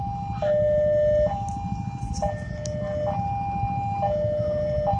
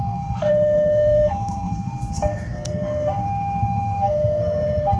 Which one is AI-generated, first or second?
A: second